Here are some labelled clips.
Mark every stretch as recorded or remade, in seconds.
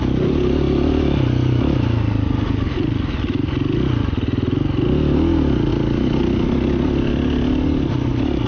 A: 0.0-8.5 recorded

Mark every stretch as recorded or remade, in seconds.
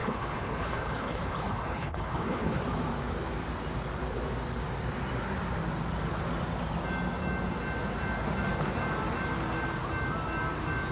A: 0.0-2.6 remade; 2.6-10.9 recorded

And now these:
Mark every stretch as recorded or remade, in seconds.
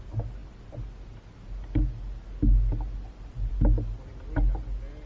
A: 0.0-5.1 recorded